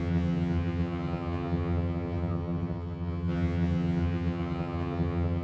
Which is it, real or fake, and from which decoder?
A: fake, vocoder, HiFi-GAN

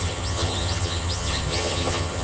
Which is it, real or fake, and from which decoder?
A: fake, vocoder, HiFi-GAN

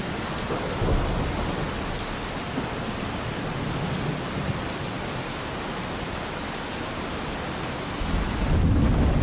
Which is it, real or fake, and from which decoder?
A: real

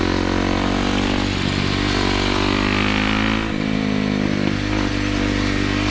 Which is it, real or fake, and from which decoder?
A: real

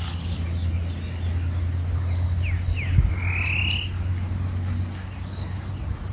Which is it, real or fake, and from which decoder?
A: real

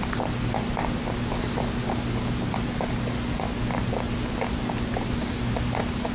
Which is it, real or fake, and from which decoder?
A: real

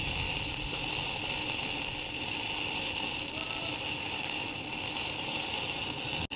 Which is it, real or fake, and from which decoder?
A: real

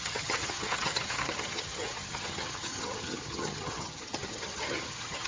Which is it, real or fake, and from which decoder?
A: fake, vocoder, HiFi-GAN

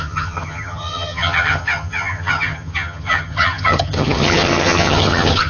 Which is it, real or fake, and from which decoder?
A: fake, vocoder, HiFi-GAN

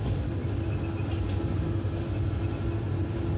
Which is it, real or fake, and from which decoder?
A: real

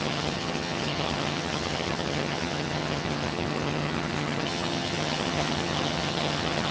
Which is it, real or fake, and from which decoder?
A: fake, vocoder, HiFi-GAN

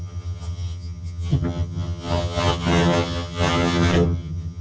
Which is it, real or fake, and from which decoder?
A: fake, vocoder, HiFi-GAN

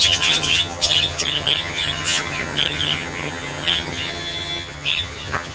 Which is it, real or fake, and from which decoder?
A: fake, vocoder, HiFi-GAN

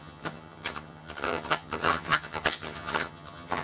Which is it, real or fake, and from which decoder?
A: fake, vocoder, HiFi-GAN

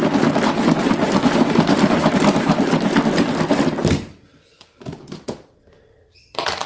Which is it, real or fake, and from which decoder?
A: real